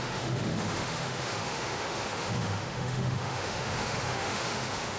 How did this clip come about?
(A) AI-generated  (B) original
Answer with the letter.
A